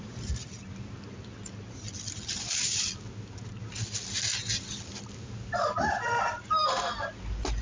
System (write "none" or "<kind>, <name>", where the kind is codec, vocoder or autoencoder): none